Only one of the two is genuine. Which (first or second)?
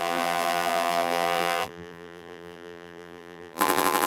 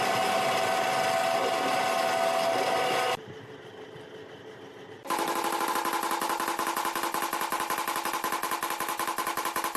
second